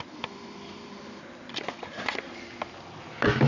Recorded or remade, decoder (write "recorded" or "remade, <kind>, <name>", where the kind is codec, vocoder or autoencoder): remade, vocoder, BigVGAN v2